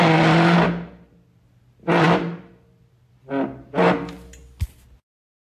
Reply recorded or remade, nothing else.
recorded